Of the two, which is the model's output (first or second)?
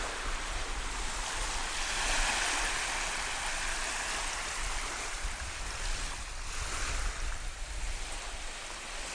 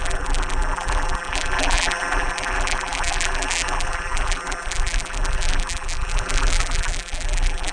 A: second